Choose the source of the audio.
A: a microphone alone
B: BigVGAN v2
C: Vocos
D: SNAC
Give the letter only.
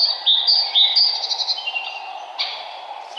A